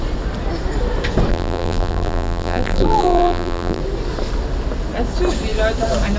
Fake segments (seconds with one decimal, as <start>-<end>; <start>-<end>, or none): 1.3-3.8